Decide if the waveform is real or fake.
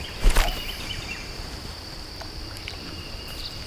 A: fake